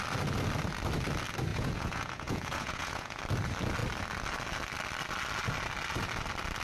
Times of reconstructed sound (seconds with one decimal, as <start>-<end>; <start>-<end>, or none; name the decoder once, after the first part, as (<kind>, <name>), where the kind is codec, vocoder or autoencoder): 1.5-3.2 (vocoder, Vocos)